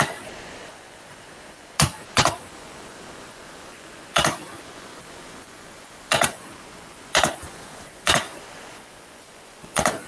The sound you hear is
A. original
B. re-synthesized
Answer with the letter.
B